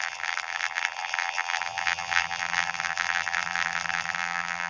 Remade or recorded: remade